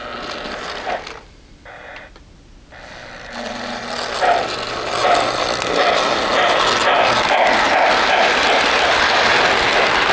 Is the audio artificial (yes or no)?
no